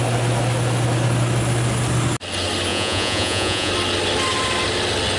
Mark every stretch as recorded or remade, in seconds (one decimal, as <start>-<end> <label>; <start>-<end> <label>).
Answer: 0.0-2.7 recorded; 2.7-3.7 remade; 3.7-5.2 recorded

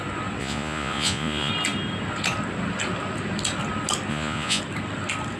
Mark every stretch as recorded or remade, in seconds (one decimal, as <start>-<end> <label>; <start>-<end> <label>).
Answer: 0.0-0.4 recorded; 0.4-1.5 remade; 1.5-4.1 recorded; 4.1-4.6 remade; 4.6-5.4 recorded

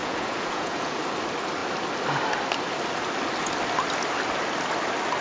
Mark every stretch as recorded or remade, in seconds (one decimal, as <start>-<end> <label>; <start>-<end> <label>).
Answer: 0.0-1.0 remade; 1.0-5.2 recorded